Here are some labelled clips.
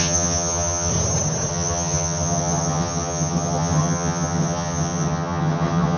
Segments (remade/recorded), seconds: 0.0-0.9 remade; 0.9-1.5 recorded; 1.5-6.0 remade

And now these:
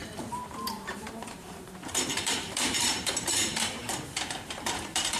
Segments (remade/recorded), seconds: 0.0-0.5 recorded; 0.5-5.2 remade

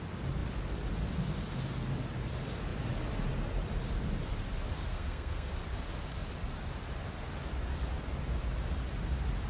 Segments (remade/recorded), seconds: 0.0-4.9 recorded; 4.9-5.5 remade; 5.5-9.5 recorded

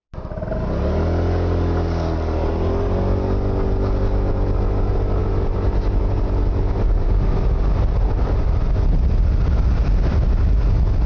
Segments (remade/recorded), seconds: 0.0-11.1 recorded

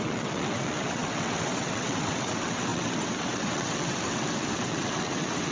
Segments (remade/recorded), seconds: 0.0-5.5 remade